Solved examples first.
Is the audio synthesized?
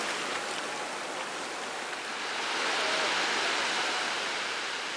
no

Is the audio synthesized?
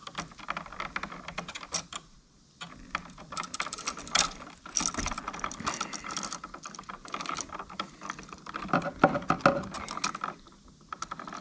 no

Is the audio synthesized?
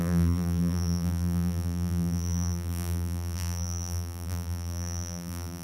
yes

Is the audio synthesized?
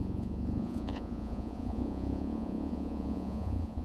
yes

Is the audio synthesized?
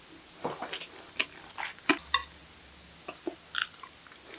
no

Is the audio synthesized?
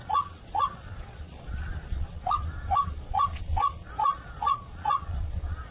yes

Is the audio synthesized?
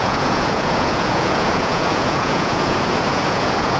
yes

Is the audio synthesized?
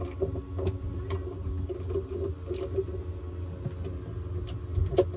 no